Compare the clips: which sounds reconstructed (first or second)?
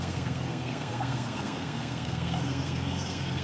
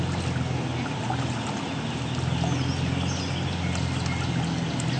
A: first